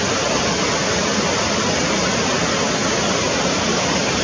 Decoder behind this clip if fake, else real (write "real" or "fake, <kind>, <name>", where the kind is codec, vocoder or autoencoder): real